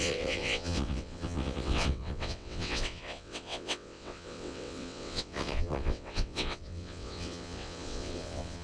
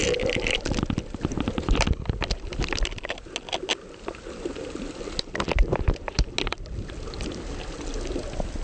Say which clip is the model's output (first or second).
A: first